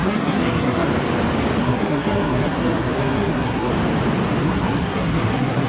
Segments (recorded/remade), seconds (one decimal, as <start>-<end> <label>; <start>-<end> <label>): 0.0-0.9 remade; 0.9-1.6 recorded; 1.6-3.7 remade; 3.7-4.4 recorded; 4.4-5.7 remade